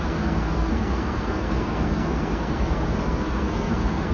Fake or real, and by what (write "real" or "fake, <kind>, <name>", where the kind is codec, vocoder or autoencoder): fake, codec, SNAC